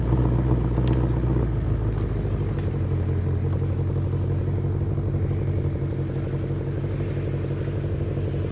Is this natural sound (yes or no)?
yes